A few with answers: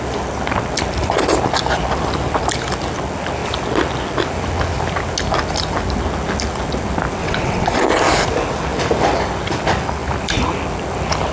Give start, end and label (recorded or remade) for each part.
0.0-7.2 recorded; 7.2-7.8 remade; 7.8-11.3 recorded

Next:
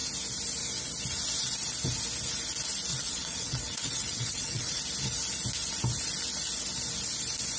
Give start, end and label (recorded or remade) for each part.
0.0-2.9 recorded; 2.9-4.8 remade; 4.8-7.6 recorded

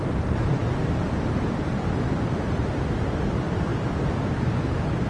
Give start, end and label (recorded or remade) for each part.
0.0-5.1 recorded

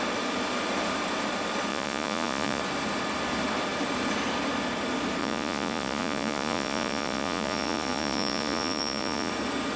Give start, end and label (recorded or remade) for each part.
0.0-1.7 recorded; 1.7-2.6 remade; 2.6-5.2 recorded; 5.2-9.3 remade; 9.3-9.8 recorded

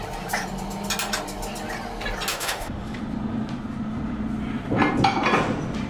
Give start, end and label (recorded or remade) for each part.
0.0-2.3 recorded; 2.3-3.0 remade; 3.0-5.9 recorded

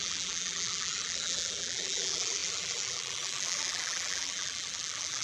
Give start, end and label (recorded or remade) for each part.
0.0-5.2 remade